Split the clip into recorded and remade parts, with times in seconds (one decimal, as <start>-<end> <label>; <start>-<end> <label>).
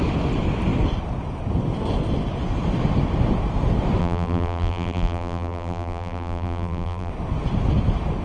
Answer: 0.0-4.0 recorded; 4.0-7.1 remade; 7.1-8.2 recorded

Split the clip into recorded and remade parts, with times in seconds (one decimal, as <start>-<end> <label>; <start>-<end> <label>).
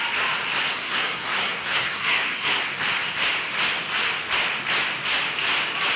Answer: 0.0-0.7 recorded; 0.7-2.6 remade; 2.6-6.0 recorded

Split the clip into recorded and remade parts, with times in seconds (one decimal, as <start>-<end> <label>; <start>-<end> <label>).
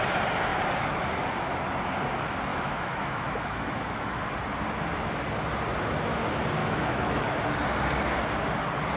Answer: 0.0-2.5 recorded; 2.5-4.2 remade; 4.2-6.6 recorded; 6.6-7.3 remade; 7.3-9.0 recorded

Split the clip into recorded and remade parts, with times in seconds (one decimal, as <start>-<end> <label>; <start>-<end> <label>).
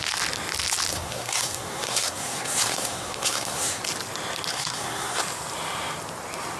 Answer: 0.0-0.9 recorded; 0.9-3.8 remade; 3.8-4.5 recorded; 4.5-5.2 remade; 5.2-6.6 recorded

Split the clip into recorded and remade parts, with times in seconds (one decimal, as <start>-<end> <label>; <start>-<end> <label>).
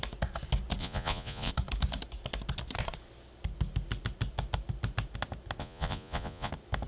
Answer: 0.0-0.8 recorded; 0.8-1.5 remade; 1.5-5.6 recorded; 5.6-6.5 remade; 6.5-6.9 recorded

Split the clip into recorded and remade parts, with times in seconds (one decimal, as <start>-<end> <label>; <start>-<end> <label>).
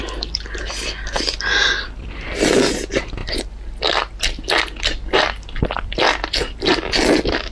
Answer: 0.0-7.5 recorded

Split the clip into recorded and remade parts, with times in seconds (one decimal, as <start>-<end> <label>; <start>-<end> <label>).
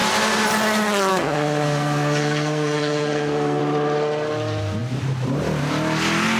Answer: 0.0-1.1 recorded; 1.1-3.6 remade; 3.6-6.4 recorded